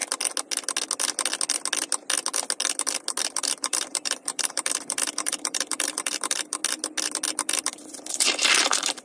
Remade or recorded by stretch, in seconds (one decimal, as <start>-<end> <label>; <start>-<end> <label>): 0.0-3.2 recorded; 3.2-6.6 remade; 6.6-7.3 recorded; 7.3-9.0 remade